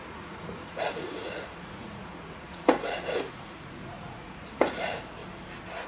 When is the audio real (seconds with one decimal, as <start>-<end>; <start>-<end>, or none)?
5.2-5.9